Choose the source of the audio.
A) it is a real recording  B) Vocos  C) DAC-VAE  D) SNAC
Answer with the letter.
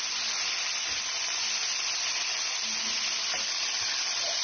A